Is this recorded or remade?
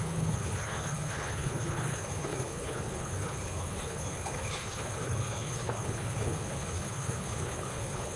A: remade